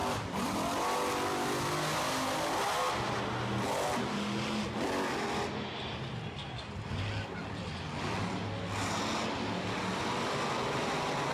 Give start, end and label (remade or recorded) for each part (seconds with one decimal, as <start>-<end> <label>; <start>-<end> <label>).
0.0-11.3 recorded